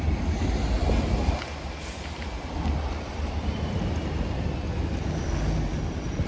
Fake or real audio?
real